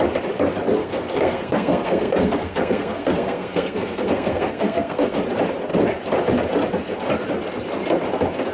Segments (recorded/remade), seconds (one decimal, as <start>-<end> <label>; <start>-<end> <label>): 0.0-0.8 recorded; 0.8-5.2 remade; 5.2-8.5 recorded